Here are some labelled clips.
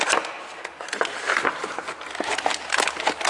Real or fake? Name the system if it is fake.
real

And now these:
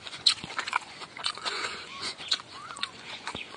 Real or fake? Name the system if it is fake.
fake, vocoder, Vocos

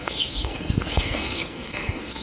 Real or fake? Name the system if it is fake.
fake, codec, SNAC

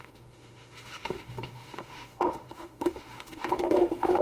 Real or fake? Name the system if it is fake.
fake, autoencoder, DAC-VAE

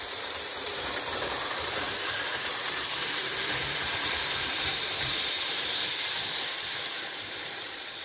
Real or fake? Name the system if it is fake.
fake, vocoder, BigVGAN v2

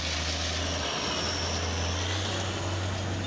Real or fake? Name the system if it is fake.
real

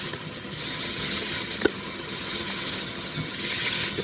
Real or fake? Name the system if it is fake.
fake, vocoder, HiFi-GAN